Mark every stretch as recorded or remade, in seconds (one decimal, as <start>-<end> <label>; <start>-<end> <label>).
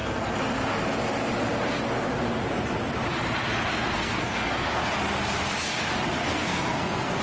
0.0-3.7 recorded; 3.7-4.8 remade; 4.8-6.2 recorded; 6.2-7.2 remade